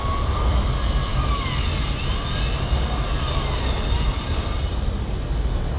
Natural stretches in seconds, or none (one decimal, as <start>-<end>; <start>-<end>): 0.0-5.8